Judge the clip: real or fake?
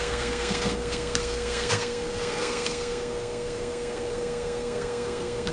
fake